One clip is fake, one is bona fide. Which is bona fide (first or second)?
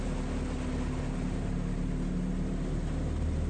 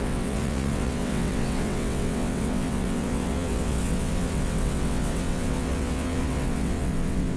first